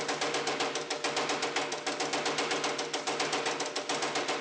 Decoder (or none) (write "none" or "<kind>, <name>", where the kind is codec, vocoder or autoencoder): none